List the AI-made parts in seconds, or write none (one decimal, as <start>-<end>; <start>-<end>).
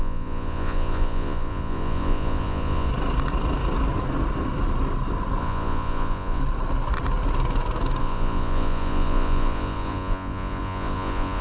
0.0-2.9; 5.4-6.4; 8.0-11.4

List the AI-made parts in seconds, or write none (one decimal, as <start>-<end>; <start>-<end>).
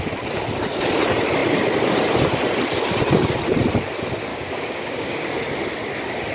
4.3-5.3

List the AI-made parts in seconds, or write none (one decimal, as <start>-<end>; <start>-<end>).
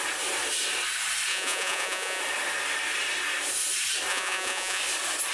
1.3-2.2; 4.1-4.8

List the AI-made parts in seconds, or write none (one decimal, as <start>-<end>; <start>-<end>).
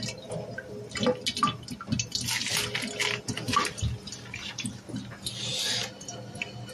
none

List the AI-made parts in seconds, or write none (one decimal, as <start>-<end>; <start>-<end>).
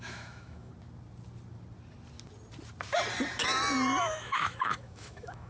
0.0-0.7; 4.0-5.5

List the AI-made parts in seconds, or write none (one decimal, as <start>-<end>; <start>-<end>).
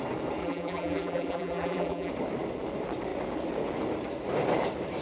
0.4-2.1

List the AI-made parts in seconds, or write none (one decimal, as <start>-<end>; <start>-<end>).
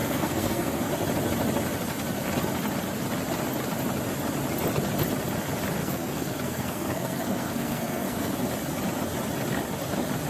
0.0-0.9; 5.8-8.5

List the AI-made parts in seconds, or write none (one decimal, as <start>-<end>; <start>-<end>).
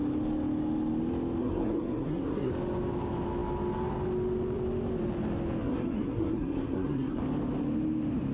1.4-2.5; 5.6-7.2